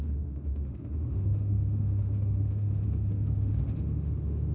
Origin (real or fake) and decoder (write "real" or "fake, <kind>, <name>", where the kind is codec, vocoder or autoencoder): fake, autoencoder, DAC-VAE